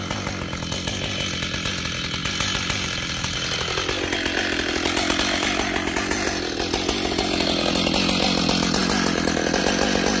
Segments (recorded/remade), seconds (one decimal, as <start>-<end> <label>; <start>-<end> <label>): 0.0-2.2 recorded; 2.2-6.3 remade; 6.3-10.2 recorded